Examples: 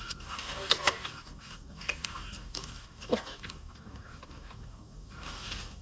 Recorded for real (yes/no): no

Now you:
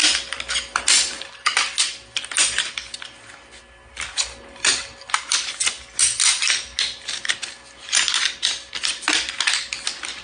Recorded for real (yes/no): yes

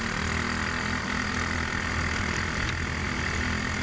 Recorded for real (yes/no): yes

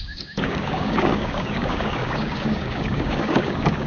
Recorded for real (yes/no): no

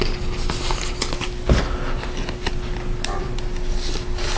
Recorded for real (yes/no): yes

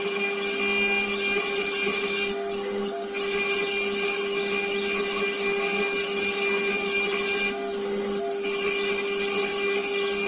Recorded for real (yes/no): yes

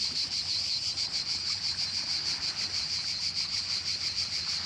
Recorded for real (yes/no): yes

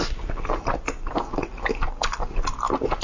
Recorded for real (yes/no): yes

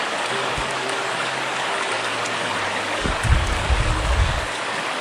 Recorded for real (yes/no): no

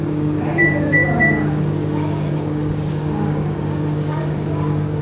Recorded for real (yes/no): no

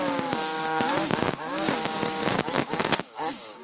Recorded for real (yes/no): no